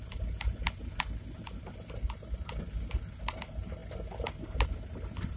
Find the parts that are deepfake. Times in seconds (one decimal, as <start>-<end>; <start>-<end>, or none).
none